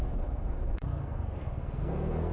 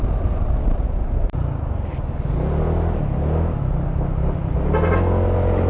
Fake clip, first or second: first